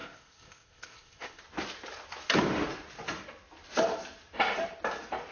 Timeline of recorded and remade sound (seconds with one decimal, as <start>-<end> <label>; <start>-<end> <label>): 0.0-1.4 remade; 1.4-5.3 recorded